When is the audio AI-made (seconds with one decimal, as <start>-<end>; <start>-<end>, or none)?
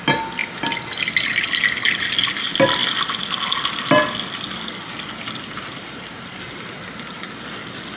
none